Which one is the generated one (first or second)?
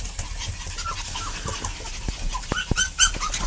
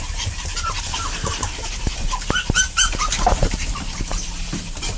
second